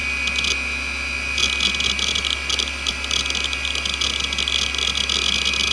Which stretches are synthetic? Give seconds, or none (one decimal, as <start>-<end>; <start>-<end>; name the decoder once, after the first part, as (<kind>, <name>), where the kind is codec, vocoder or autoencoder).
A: none